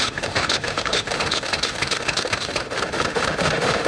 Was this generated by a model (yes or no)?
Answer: yes